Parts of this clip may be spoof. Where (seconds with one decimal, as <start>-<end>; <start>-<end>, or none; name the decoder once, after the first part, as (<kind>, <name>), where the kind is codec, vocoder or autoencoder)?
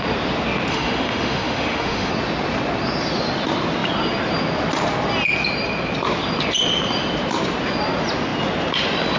0.7-2.1 (autoencoder, DAC-VAE)